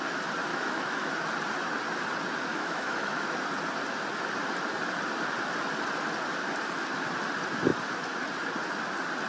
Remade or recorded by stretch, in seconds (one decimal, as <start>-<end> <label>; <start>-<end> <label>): 0.0-0.5 recorded; 0.5-1.1 remade; 1.1-2.5 recorded; 2.5-3.3 remade; 3.3-9.3 recorded